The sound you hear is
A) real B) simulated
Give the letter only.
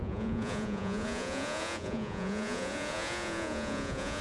B